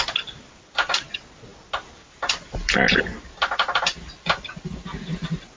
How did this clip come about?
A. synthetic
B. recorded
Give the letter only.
B